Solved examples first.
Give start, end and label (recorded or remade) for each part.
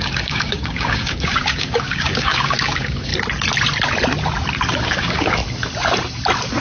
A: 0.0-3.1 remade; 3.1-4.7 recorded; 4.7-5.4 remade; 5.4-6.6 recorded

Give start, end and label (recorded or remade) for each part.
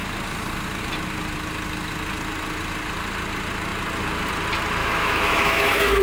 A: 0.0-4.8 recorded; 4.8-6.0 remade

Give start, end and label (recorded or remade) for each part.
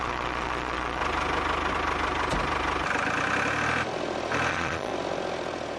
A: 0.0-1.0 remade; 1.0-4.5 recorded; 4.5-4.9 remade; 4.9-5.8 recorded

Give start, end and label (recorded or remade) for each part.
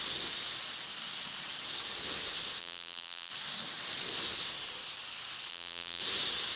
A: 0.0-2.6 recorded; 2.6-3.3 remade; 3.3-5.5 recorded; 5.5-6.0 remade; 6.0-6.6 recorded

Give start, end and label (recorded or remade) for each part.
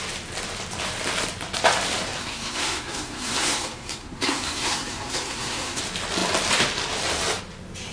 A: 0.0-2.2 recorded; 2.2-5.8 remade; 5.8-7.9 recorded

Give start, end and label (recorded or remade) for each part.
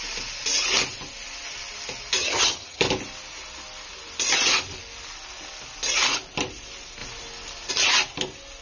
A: 0.0-2.2 recorded; 2.2-2.8 remade; 2.8-8.6 recorded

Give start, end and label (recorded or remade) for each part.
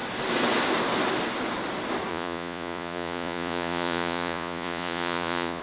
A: 0.0-2.1 recorded; 2.1-5.6 remade